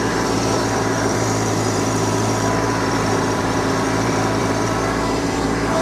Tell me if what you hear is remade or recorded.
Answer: remade